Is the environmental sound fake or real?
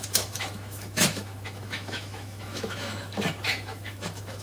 fake